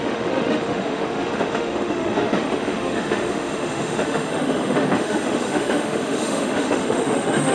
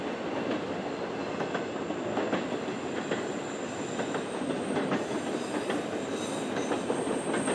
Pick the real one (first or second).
second